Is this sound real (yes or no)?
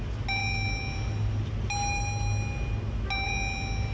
yes